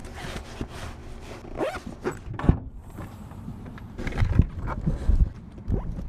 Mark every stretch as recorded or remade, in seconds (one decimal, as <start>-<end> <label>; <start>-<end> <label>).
0.0-2.8 recorded; 2.8-4.2 remade; 4.2-6.1 recorded